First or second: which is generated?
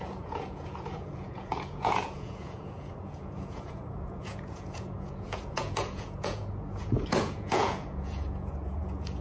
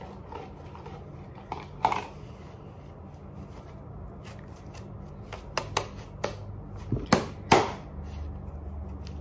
first